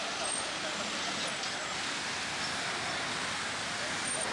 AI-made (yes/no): no